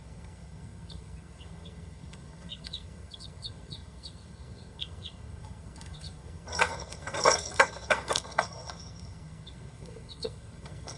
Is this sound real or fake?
fake